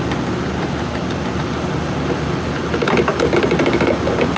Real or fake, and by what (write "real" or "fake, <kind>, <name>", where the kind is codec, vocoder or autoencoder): real